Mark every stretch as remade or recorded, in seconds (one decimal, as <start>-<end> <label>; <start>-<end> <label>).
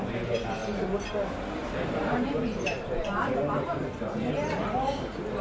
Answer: 0.0-1.6 recorded; 1.6-3.8 remade; 3.8-5.4 recorded